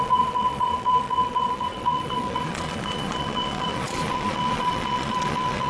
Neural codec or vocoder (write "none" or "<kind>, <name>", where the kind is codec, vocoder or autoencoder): vocoder, Vocos